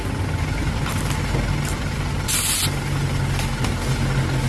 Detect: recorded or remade recorded